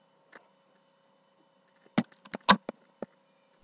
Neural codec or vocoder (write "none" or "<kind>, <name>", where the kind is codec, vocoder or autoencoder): none